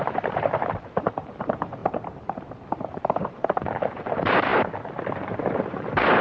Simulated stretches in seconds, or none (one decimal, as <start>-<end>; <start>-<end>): 0.0-4.5; 5.1-6.2